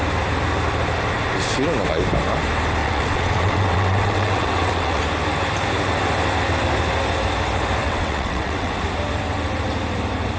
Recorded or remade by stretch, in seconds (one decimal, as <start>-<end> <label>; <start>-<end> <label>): 0.0-2.8 recorded; 2.8-5.0 remade; 5.0-7.8 recorded; 7.8-8.7 remade; 8.7-10.4 recorded